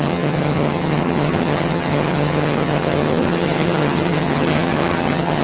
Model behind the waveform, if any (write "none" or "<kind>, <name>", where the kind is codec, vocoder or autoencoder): vocoder, HiFi-GAN